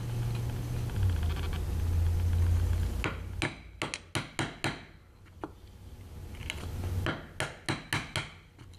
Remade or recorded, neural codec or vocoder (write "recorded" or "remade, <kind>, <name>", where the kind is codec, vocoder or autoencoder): recorded